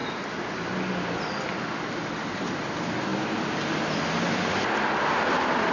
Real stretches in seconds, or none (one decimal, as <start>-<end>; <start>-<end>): 0.0-5.7